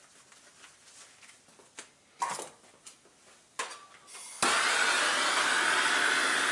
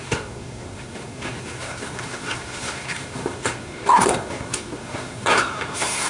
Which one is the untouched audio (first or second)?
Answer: first